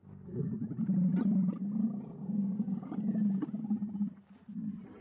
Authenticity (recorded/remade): recorded